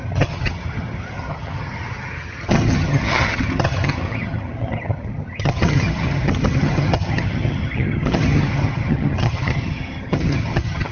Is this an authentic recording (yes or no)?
no